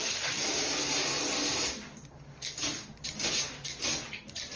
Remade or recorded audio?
recorded